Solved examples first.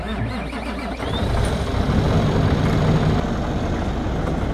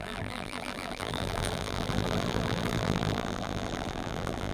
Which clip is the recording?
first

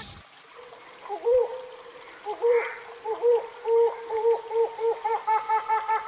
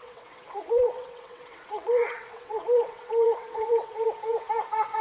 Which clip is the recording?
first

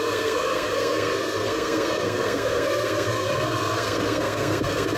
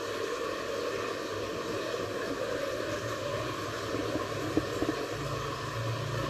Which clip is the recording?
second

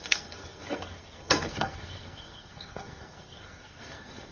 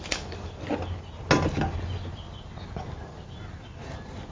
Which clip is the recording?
second